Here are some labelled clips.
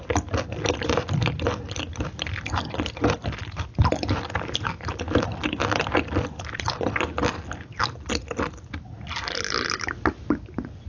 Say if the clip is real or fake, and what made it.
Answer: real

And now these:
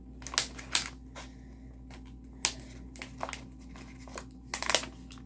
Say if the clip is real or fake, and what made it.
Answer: real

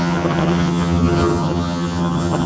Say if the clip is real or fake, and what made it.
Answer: fake, vocoder, HiFi-GAN